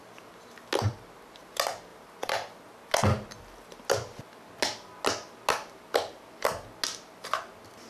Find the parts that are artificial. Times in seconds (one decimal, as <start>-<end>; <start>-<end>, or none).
1.9-2.7

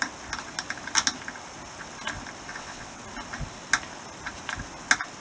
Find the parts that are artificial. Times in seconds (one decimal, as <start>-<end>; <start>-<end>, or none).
2.5-3.0